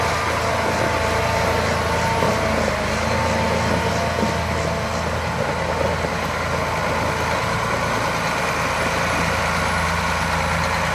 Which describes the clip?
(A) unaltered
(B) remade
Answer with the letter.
A